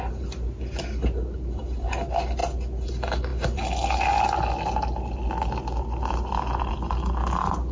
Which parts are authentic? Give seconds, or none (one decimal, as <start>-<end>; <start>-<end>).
0.0-7.7